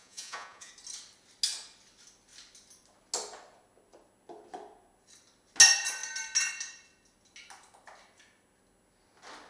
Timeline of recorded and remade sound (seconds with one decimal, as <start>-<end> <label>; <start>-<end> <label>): 0.0-0.7 remade; 0.7-9.5 recorded